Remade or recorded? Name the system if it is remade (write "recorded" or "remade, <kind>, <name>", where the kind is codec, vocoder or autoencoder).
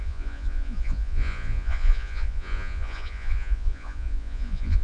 remade, vocoder, Vocos